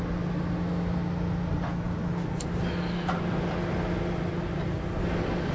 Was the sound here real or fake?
real